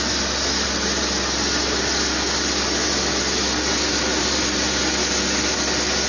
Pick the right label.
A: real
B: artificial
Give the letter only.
A